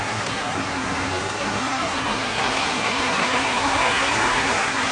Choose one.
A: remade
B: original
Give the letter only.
A